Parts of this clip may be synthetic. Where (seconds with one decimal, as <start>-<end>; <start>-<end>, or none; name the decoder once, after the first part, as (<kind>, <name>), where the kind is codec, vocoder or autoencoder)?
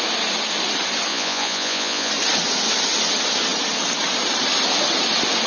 1.1-2.1 (vocoder, Vocos)